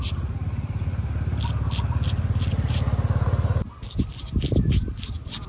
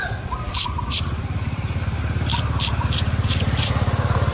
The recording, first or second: first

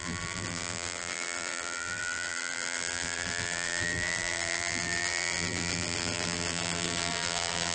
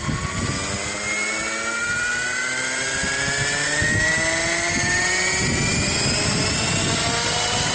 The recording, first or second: second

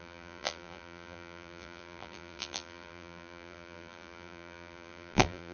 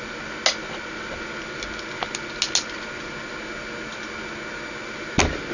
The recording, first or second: second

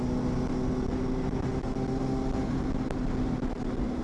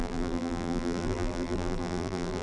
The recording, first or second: first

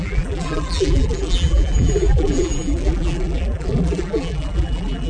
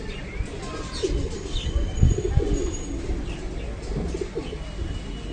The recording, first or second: second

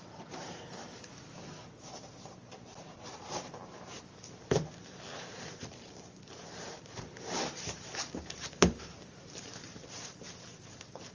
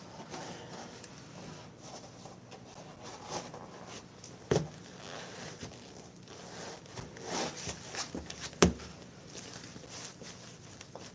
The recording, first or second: second